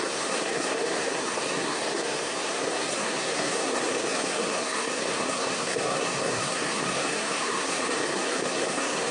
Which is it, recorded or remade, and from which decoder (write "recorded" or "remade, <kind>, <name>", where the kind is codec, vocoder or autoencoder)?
remade, codec, SNAC